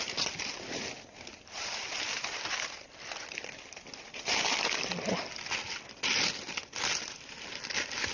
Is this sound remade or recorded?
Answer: recorded